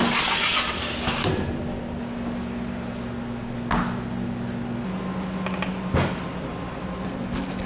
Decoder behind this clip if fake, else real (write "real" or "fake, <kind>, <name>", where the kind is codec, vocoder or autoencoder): real